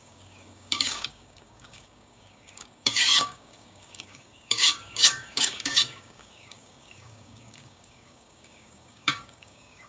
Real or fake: fake